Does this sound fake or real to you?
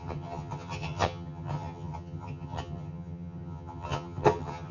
fake